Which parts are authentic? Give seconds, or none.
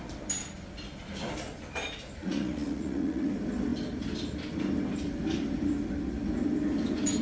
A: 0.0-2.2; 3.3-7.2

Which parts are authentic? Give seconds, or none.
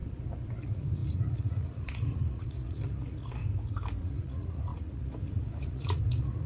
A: 0.0-0.6; 3.4-4.0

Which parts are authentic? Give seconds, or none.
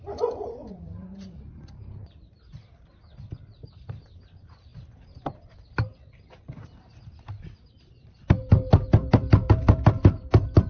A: 0.0-10.7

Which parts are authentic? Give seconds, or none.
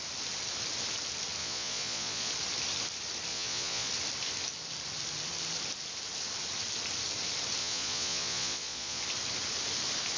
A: 0.0-1.4; 2.3-3.3; 3.9-7.6; 9.0-10.2